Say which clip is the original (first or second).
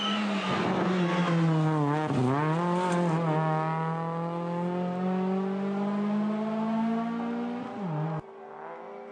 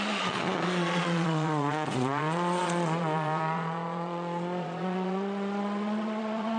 first